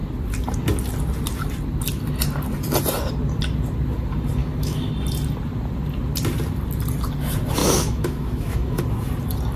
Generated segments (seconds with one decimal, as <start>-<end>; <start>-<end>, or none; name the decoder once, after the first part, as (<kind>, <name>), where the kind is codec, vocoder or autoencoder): 4.4-4.9 (autoencoder, DAC-VAE); 7.6-8.8